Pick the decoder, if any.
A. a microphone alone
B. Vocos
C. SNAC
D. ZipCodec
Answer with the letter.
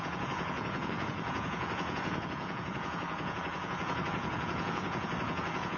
B